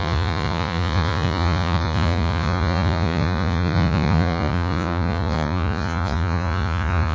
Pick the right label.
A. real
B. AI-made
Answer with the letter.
B